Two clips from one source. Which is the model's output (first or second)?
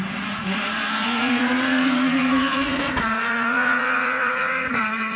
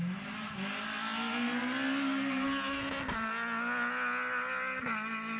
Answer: first